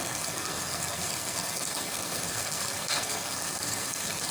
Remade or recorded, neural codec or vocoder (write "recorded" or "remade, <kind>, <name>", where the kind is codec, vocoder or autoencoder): remade, codec, SNAC